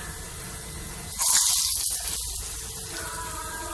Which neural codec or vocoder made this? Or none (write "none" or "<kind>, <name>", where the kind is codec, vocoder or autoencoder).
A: none